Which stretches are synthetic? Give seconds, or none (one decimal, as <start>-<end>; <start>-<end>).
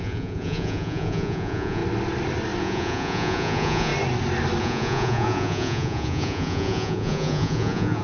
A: 0.0-1.8; 2.6-3.9; 4.6-8.0